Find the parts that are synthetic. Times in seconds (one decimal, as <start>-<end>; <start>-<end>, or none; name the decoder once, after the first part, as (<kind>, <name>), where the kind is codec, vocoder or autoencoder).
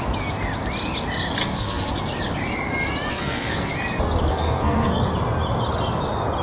1.4-1.9 (codec, SNAC); 3.1-3.7; 4.3-5.0